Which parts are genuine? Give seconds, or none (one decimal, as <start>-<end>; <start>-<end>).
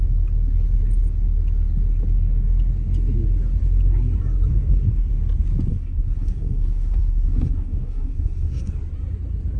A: 0.0-4.5; 5.1-5.7; 8.7-9.6